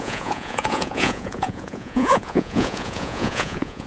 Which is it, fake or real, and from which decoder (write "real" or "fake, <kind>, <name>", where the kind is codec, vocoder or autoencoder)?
fake, vocoder, Vocos